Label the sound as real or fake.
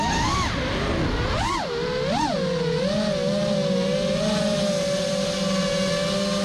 real